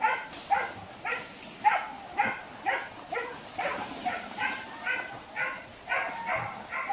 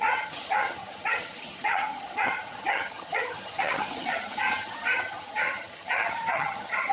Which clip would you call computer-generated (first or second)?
second